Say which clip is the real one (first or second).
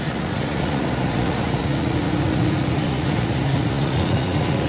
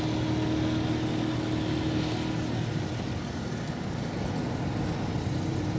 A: second